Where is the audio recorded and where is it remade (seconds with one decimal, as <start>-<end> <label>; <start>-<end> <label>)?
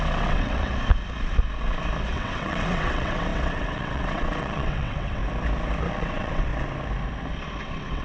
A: 0.0-0.7 remade; 0.7-2.1 recorded; 2.1-5.2 remade; 5.2-5.9 recorded; 5.9-6.5 remade; 6.5-7.6 recorded; 7.6-8.0 remade